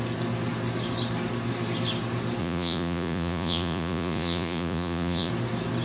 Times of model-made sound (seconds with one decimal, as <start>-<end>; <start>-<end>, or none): 2.4-5.3